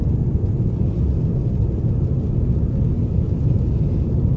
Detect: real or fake real